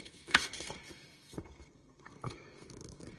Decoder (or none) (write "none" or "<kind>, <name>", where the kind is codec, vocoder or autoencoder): codec, SNAC